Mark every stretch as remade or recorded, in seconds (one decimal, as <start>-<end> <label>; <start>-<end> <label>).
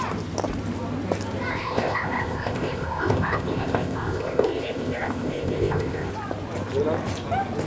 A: 0.0-1.5 recorded; 1.5-6.1 remade; 6.1-7.7 recorded